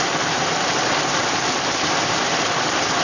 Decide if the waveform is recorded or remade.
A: remade